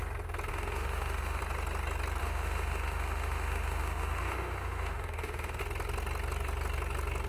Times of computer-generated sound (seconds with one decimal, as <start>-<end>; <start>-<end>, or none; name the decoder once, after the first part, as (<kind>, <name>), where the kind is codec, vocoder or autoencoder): 0.5-1.4 (autoencoder, DAC-VAE); 2.2-5.6